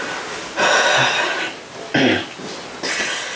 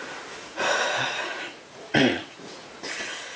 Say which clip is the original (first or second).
first